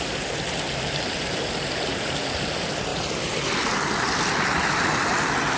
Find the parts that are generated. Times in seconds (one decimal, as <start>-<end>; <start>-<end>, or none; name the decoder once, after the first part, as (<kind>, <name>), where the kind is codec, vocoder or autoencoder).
none